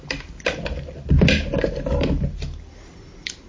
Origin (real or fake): real